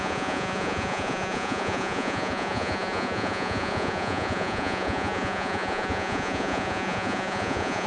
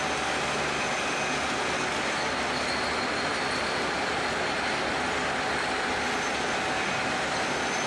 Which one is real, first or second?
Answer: second